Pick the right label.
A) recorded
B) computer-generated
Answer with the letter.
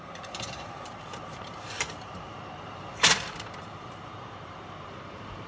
B